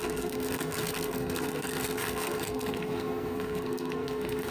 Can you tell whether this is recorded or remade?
remade